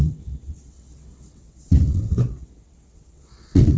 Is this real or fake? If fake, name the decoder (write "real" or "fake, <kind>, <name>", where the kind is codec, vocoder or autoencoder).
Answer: fake, vocoder, WaveNeXt